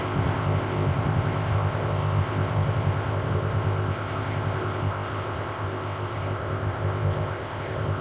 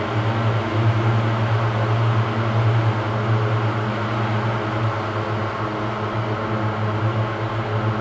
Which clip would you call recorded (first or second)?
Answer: second